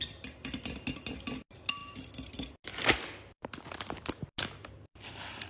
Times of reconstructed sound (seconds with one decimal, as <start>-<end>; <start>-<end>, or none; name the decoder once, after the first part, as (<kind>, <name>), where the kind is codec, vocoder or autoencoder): none